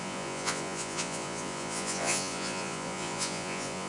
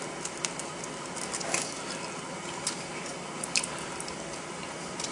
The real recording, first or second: second